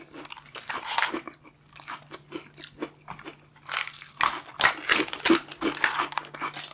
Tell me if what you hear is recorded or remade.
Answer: recorded